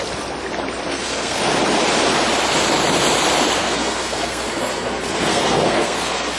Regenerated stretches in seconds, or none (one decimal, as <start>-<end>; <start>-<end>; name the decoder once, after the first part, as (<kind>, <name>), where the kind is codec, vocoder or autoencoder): 0.9-1.4 (codec, SNAC); 3.6-6.4